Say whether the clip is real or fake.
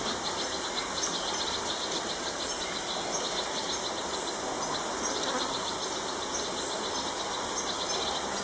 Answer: real